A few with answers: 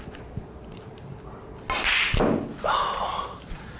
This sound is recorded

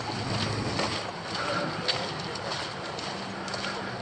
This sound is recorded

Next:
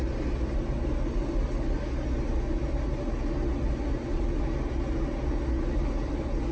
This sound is recorded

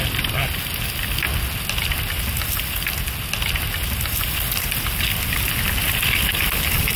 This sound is recorded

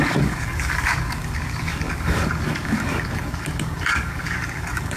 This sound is remade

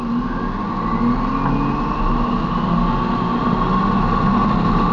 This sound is recorded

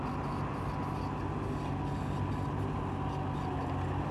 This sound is recorded